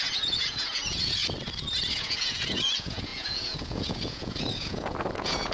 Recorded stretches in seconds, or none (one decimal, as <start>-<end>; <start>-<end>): 1.2-1.9